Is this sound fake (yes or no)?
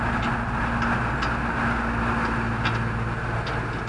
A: no